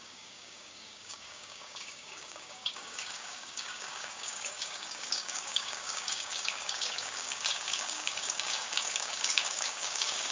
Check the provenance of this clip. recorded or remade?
remade